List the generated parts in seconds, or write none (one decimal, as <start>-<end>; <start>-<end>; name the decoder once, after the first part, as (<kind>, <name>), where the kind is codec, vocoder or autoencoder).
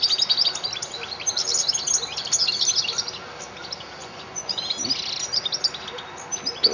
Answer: 4.0-4.6 (vocoder, Vocos)